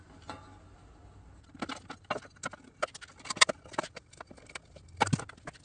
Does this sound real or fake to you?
real